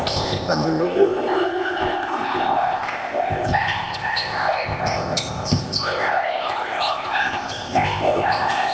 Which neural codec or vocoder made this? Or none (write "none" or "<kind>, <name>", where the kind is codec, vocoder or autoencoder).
codec, ZipCodec